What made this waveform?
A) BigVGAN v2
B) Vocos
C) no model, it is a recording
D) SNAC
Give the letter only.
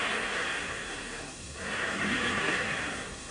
D